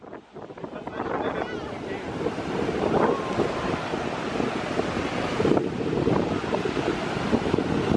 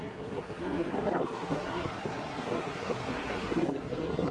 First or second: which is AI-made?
second